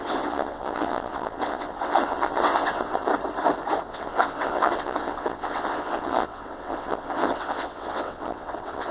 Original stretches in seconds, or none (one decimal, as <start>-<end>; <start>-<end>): 3.1-3.9